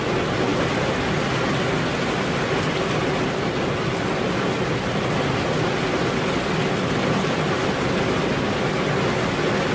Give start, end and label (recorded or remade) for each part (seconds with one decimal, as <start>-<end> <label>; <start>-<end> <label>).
0.0-9.7 recorded